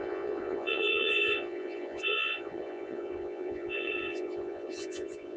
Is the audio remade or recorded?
remade